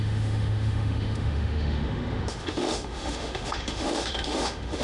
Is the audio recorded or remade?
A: remade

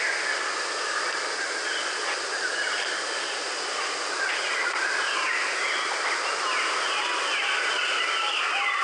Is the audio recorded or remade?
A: recorded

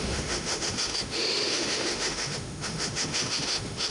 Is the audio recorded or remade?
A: remade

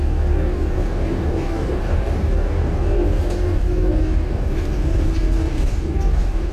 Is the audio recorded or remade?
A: remade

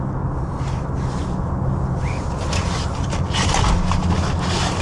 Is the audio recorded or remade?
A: recorded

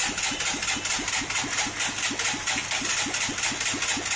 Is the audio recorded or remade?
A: recorded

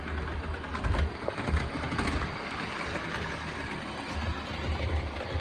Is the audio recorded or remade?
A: remade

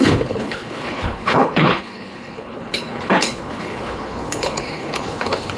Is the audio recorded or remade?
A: remade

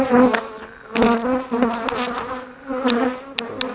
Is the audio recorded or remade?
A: recorded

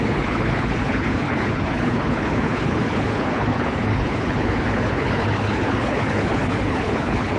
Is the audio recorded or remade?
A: remade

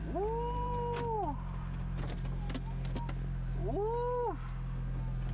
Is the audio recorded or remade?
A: recorded